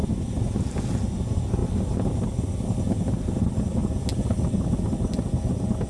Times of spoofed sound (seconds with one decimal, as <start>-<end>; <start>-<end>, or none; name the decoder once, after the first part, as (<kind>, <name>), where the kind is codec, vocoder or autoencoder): none